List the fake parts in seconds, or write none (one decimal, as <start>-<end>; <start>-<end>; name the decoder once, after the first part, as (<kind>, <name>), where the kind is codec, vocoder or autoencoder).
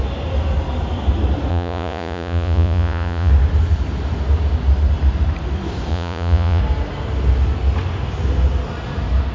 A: 1.5-3.3 (vocoder, Vocos); 5.9-6.6